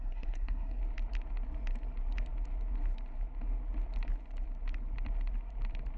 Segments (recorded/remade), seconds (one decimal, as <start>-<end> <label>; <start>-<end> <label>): 0.0-0.8 remade; 0.8-6.0 recorded

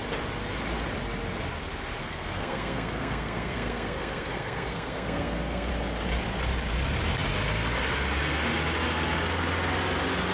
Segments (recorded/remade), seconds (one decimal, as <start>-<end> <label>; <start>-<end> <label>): 0.0-2.0 recorded; 2.0-5.7 remade; 5.7-10.3 recorded

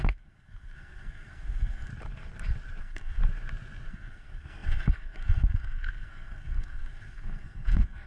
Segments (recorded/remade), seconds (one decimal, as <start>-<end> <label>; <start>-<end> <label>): 0.0-1.9 remade; 1.9-2.8 recorded; 2.8-3.2 remade; 3.2-3.9 recorded; 3.9-8.1 remade

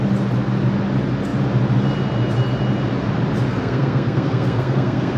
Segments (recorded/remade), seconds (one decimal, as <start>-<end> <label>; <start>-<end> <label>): 0.0-3.5 recorded; 3.5-5.2 remade

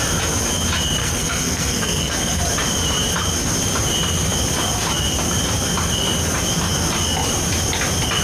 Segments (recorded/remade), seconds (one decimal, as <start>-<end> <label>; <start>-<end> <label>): 0.0-1.0 recorded; 1.0-2.4 remade; 2.4-8.2 recorded

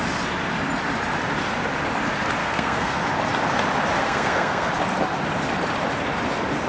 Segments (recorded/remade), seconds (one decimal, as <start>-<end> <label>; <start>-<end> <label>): 0.0-2.4 recorded; 2.4-3.0 remade; 3.0-4.0 recorded; 4.0-4.7 remade; 4.7-6.7 recorded